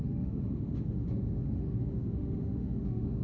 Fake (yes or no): yes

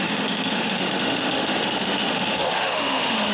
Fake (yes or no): yes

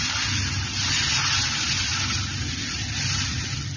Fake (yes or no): no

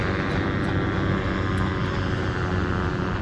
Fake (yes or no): no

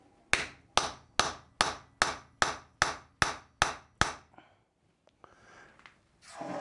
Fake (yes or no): no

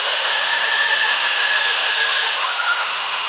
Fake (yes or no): yes